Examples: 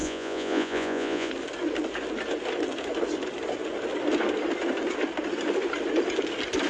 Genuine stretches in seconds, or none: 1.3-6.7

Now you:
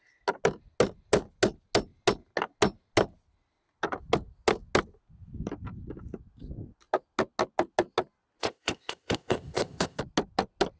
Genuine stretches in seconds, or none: 0.0-8.4; 10.0-10.8

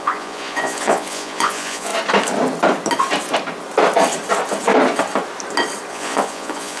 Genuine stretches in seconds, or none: 1.9-5.9

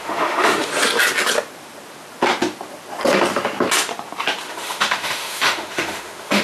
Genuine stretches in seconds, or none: 0.7-4.5

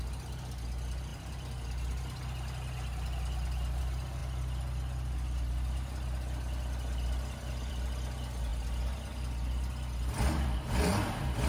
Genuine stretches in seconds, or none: 0.0-11.5

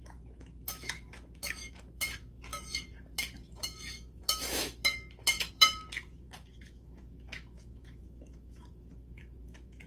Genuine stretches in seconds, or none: none